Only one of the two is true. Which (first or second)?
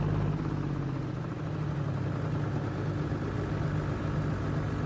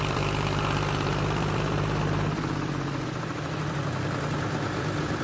first